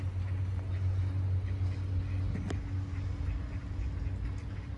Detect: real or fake real